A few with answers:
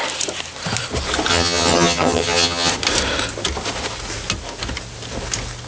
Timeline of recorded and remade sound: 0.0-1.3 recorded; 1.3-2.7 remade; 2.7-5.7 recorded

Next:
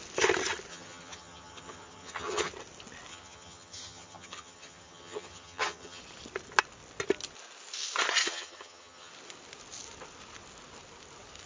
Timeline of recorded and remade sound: 0.0-0.7 recorded; 0.7-2.5 remade; 2.5-3.1 recorded; 3.1-6.0 remade; 6.0-8.2 recorded; 8.2-9.1 remade; 9.1-11.5 recorded